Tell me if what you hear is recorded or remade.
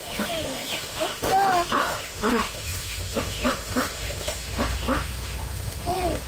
remade